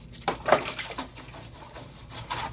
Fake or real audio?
real